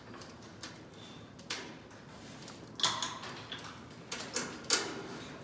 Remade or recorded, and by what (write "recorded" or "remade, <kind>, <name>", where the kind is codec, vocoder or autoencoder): recorded